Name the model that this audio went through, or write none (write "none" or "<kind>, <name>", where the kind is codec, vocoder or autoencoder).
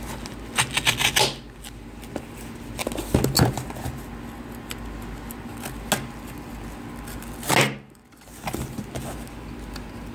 none